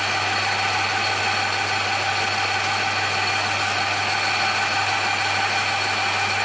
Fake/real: real